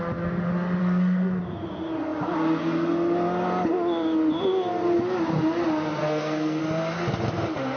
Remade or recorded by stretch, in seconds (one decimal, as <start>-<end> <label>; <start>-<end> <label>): 0.0-0.8 recorded; 0.8-1.4 remade; 1.4-6.0 recorded; 6.0-6.6 remade; 6.6-7.8 recorded